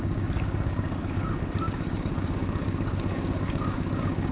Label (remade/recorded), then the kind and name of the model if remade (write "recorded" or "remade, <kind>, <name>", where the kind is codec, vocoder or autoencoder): remade, codec, DAC